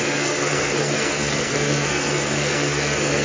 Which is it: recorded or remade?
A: remade